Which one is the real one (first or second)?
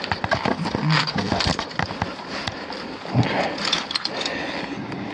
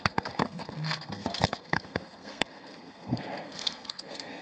first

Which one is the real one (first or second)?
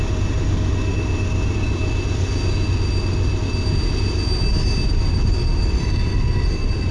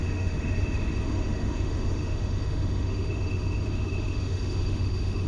first